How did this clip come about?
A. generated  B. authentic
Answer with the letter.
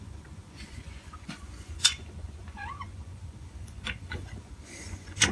A